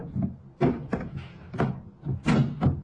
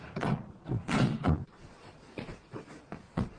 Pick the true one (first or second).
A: first